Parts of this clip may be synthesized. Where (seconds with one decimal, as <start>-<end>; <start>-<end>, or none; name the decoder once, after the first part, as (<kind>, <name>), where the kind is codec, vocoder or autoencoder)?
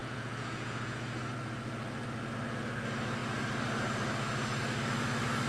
0.0-1.2 (vocoder, Vocos)